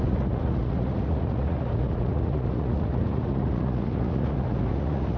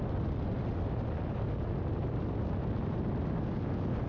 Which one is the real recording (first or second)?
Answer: second